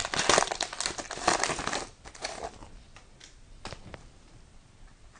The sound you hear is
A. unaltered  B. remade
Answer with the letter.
A